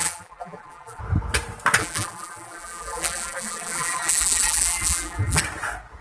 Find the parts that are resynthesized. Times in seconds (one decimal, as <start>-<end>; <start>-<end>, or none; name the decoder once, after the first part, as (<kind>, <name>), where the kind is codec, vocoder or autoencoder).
0.0-1.0 (vocoder, BigVGAN v2); 1.8-5.4